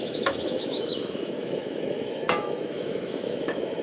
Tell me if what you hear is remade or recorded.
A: remade